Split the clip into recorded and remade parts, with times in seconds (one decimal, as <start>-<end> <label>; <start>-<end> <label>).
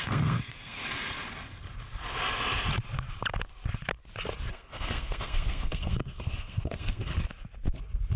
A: 0.0-0.8 remade; 0.8-4.5 recorded; 4.5-7.1 remade; 7.1-8.2 recorded